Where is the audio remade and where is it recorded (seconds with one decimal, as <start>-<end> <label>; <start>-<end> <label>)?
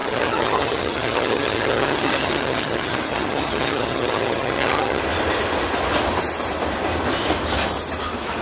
0.0-5.0 remade; 5.0-8.4 recorded